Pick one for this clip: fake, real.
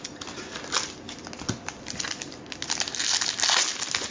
real